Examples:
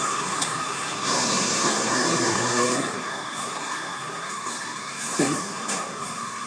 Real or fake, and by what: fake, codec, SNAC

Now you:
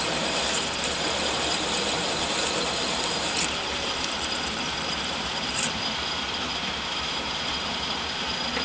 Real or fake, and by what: fake, vocoder, BigVGAN v2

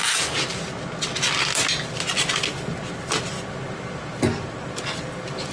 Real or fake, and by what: real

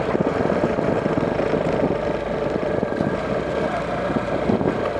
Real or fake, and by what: real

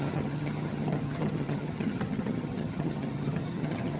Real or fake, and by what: fake, vocoder, HiFi-GAN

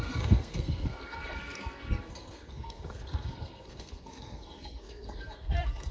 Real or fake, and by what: fake, codec, SNAC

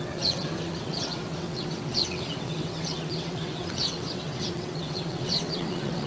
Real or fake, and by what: fake, vocoder, WaveNeXt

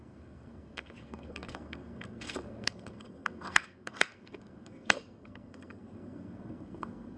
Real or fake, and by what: fake, codec, SNAC